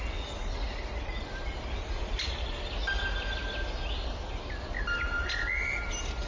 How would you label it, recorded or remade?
recorded